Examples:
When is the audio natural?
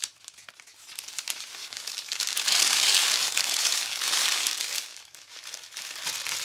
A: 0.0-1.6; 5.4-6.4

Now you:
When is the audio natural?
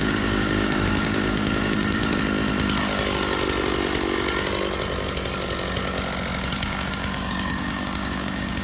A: 2.0-6.4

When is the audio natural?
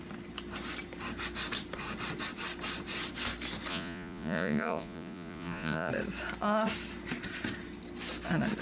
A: 0.0-3.7; 5.9-8.6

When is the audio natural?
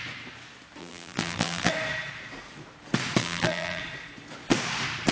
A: 0.0-0.8; 1.7-3.2; 3.8-5.1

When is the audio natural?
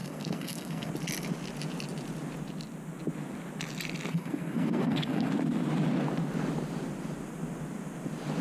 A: 0.9-4.1; 5.3-8.4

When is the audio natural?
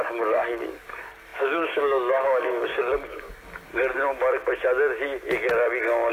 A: 3.7-6.1